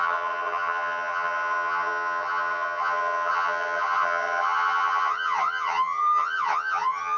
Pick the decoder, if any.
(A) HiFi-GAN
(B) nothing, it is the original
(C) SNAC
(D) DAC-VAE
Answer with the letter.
A